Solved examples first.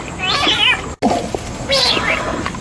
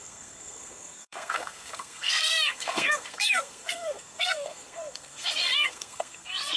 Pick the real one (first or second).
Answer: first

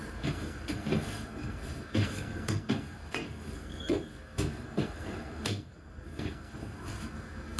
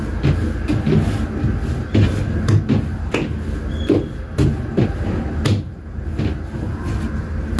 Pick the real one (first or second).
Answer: second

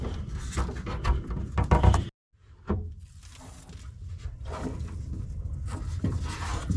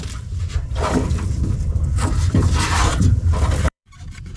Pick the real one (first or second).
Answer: first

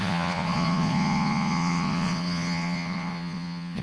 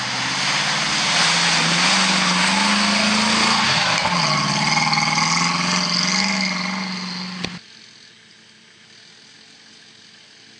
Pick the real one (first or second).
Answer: second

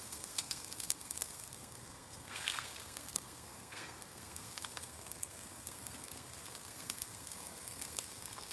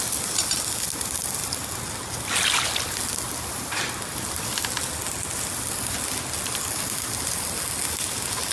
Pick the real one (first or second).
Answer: second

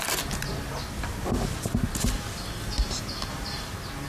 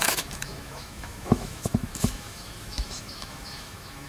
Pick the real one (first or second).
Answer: first